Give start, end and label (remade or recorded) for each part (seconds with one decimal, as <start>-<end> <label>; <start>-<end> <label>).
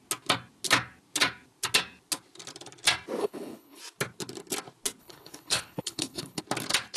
0.0-3.2 recorded; 3.2-3.8 remade; 3.8-5.0 recorded; 5.0-6.4 remade; 6.4-7.0 recorded